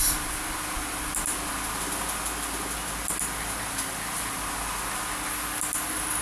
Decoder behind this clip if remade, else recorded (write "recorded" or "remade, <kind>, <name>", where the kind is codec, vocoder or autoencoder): recorded